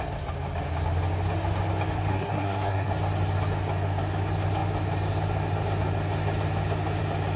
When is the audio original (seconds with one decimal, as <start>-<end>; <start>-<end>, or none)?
0.0-2.1; 2.9-7.4